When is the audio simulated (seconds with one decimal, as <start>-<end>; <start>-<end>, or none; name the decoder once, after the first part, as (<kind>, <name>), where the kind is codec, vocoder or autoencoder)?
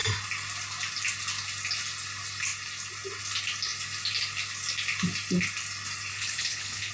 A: 6.1-6.9 (codec, HILCodec)